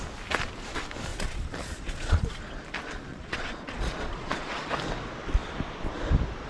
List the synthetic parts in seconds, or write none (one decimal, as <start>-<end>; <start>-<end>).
1.1-2.3; 3.1-4.7